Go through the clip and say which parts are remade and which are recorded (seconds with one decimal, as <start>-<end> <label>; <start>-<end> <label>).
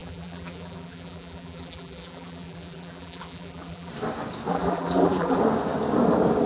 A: 0.0-3.9 remade; 3.9-4.5 recorded; 4.5-5.4 remade; 5.4-6.5 recorded